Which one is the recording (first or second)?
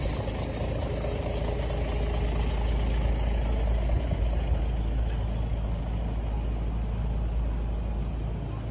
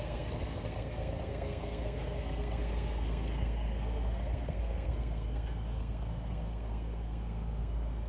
first